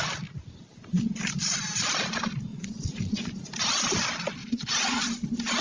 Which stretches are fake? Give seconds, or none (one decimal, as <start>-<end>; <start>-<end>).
2.5-3.3; 4.4-5.0